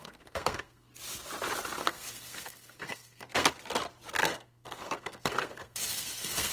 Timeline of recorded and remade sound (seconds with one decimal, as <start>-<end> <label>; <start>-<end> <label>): 0.0-0.9 remade; 0.9-1.8 recorded; 1.8-3.5 remade; 3.5-4.2 recorded; 4.2-6.5 remade